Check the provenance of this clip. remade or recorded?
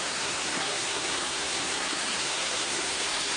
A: remade